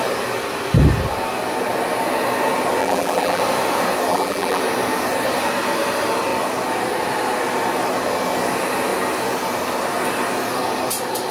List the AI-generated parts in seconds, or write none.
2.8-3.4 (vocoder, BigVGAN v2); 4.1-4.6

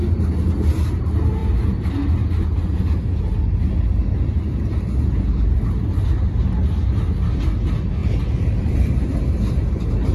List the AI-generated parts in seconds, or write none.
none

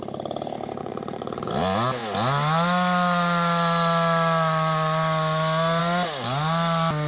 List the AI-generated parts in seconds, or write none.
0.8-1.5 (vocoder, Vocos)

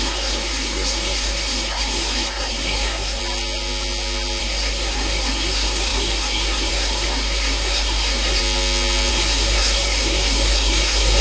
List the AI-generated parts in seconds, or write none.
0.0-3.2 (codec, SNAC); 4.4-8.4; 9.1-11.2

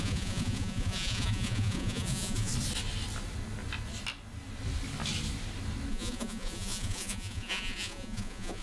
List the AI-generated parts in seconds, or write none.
0.0-2.5 (vocoder, Vocos); 5.9-8.6